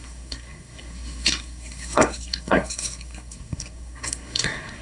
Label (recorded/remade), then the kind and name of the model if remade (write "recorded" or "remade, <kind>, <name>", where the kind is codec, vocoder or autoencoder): remade, codec, SNAC